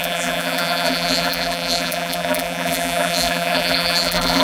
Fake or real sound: fake